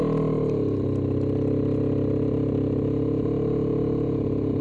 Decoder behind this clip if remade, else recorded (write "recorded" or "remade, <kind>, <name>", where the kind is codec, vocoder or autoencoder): recorded